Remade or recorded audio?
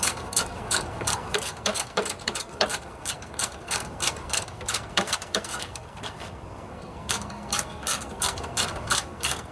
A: remade